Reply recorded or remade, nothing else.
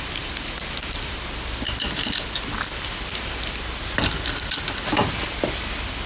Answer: recorded